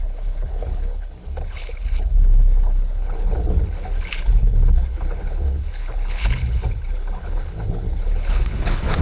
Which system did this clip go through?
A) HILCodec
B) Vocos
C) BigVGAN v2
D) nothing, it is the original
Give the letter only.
A